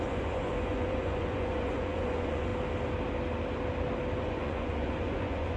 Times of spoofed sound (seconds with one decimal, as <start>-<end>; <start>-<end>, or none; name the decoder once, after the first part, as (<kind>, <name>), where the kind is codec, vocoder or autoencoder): 0.0-2.5 (vocoder, Vocos); 4.2-5.6

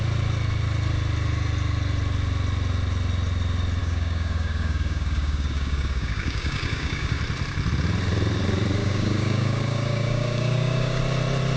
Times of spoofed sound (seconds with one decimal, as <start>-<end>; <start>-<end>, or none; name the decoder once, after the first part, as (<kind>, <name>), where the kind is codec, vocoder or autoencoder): 3.8-7.2 (codec, DAC); 8.8-11.0

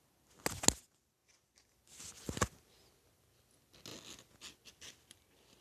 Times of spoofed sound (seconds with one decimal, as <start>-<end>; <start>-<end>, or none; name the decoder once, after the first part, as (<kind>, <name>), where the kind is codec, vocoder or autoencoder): none

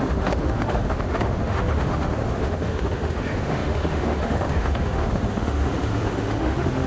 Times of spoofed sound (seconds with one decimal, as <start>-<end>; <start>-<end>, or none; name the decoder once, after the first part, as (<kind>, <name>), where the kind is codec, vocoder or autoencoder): 0.0-6.9 (autoencoder, DAC-VAE)

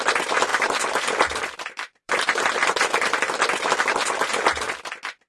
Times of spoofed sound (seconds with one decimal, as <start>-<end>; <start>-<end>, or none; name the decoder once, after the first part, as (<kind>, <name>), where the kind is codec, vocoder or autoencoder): 0.5-3.7 (vocoder, BigVGAN v2)

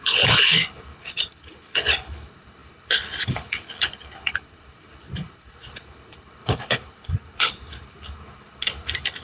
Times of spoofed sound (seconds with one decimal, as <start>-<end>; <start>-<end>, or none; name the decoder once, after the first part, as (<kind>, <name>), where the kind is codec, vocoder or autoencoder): 0.0-9.2 (codec, HILCodec)